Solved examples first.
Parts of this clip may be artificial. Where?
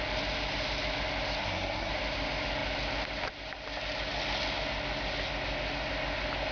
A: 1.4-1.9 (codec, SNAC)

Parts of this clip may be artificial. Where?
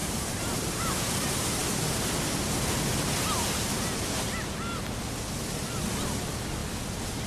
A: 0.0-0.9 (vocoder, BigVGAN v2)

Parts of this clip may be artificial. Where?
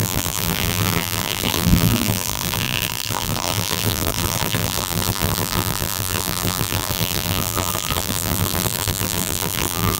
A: 0.0-10.0 (vocoder, BigVGAN v2)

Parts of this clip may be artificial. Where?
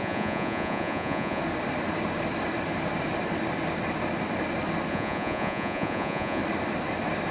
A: 0.0-1.4 (vocoder, Vocos); 4.9-6.4